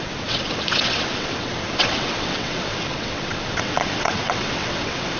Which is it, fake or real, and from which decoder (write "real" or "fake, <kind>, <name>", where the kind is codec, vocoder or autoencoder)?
fake, vocoder, WaveNeXt